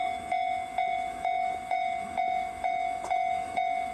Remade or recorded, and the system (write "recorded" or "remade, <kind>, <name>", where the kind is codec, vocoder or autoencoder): remade, autoencoder, DAC-VAE